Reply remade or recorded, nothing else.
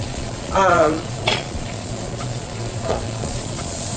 remade